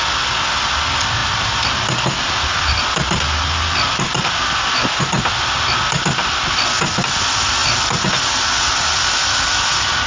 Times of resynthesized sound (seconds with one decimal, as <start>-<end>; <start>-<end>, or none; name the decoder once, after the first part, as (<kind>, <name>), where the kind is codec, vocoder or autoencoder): none